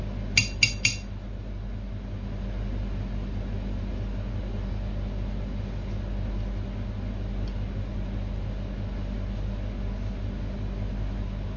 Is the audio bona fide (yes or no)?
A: yes